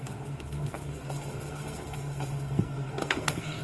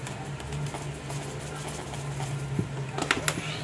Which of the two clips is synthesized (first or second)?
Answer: first